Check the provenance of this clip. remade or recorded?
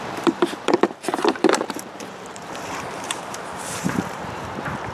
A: remade